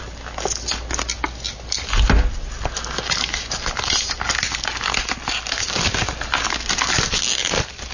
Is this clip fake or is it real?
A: real